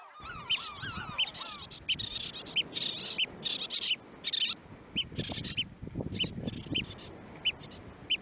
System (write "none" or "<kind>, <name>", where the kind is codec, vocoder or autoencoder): none